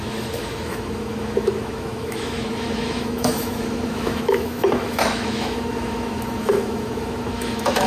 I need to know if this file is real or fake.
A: fake